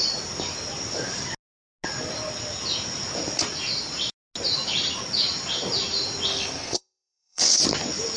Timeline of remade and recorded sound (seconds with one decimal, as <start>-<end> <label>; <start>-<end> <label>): 0.0-6.3 recorded; 6.3-7.6 remade; 7.6-8.2 recorded